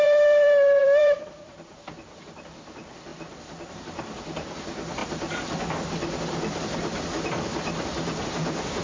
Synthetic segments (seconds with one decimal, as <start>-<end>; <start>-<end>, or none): 0.0-3.1; 3.7-5.0; 8.2-8.8